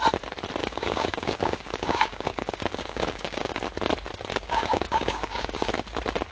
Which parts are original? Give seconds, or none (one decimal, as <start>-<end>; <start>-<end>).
0.0-0.6; 3.6-4.3; 5.7-6.3